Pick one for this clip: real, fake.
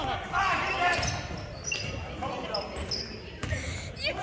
real